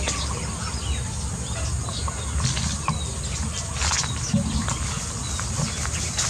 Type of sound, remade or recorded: recorded